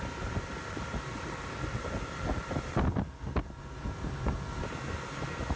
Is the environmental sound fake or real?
real